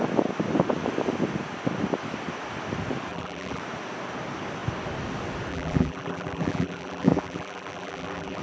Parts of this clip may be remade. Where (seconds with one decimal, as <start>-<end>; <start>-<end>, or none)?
3.1-3.6; 5.5-8.4